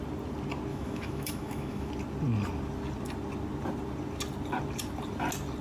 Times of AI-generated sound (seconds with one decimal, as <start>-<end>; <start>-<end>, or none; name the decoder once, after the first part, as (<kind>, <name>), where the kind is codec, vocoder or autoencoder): 0.7-1.9 (autoencoder, DAC-VAE)